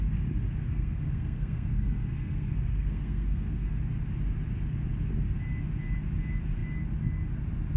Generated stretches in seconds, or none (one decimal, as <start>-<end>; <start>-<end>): 0.7-3.7